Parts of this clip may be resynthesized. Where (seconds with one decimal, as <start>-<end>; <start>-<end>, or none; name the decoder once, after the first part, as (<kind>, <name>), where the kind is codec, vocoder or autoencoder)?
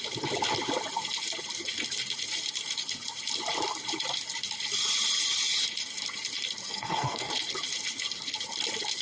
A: 6.6-7.3 (codec, SNAC)